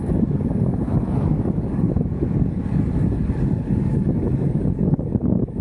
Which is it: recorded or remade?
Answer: remade